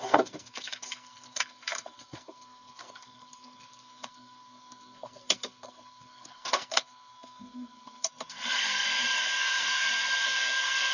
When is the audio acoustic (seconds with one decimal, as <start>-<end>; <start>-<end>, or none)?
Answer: none